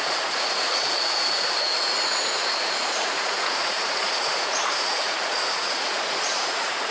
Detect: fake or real fake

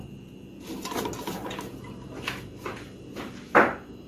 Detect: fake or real real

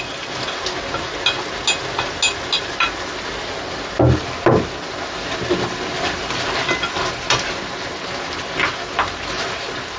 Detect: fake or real real